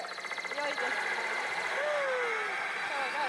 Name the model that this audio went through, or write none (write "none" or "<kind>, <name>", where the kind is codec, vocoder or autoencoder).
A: none